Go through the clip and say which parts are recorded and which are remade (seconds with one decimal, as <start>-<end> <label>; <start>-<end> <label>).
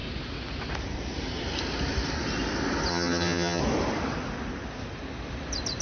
0.0-2.9 recorded; 2.9-3.6 remade; 3.6-5.8 recorded